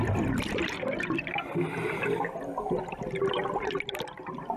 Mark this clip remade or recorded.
recorded